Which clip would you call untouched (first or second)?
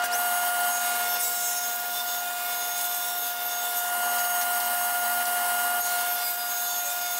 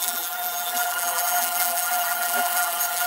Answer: first